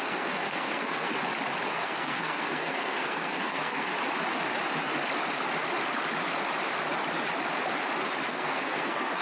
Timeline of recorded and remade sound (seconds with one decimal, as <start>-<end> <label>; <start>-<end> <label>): 0.0-1.1 remade; 1.1-1.7 recorded; 1.7-3.9 remade; 3.9-8.3 recorded; 8.3-9.2 remade